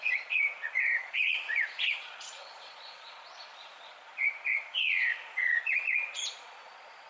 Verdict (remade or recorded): remade